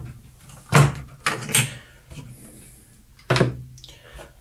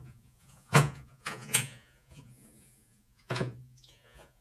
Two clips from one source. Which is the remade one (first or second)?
second